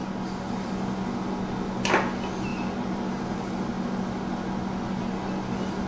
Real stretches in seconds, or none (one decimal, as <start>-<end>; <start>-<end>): 0.0-2.5; 3.2-5.9